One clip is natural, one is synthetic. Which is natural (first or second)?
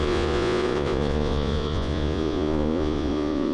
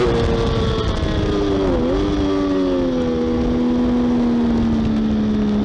second